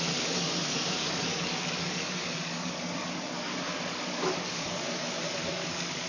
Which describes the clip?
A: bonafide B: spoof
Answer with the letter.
B